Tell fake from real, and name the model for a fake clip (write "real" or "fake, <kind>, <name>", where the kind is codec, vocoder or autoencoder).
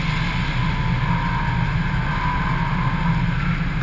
real